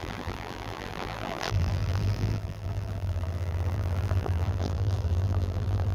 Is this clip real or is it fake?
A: fake